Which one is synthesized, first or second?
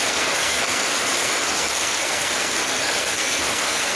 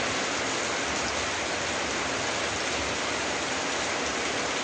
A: first